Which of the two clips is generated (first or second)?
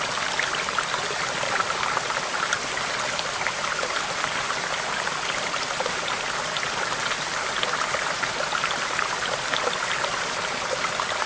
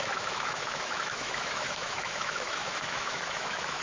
second